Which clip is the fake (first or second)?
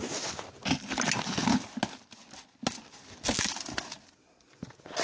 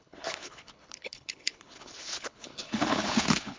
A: second